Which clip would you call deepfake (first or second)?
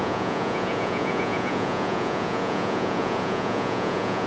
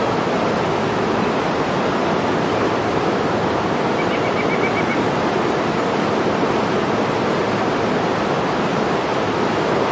first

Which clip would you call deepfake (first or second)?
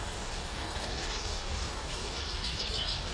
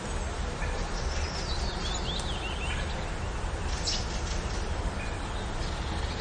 first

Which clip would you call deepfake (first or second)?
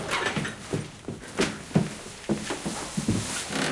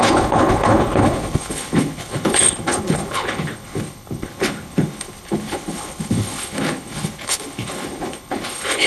second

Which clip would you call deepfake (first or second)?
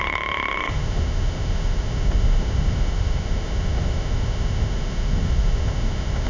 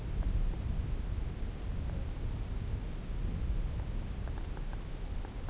first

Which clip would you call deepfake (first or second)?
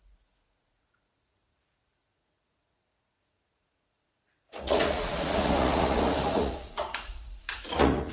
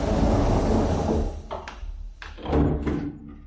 first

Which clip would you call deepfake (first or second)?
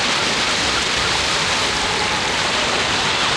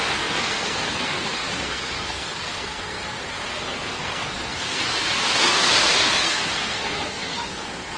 second